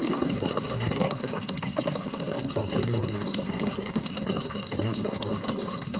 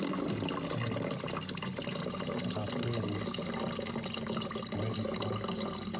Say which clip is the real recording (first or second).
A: second